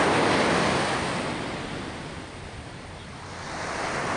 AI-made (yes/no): no